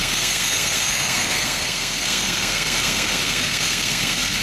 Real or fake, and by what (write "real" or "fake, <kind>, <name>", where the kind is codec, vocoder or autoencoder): fake, codec, SNAC